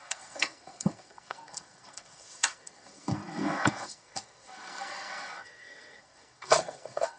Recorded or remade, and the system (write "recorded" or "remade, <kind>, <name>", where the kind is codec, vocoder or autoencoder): remade, codec, SNAC